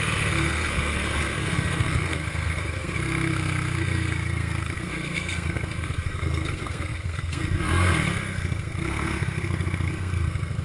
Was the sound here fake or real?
fake